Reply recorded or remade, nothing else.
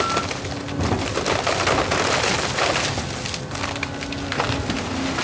recorded